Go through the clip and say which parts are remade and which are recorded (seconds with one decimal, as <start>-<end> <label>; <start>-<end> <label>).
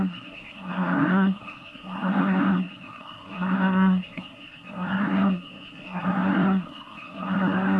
0.0-7.8 remade